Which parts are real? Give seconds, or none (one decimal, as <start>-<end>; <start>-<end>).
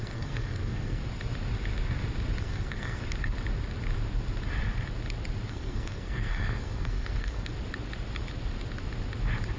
1.0-2.4; 3.0-5.5; 7.5-9.6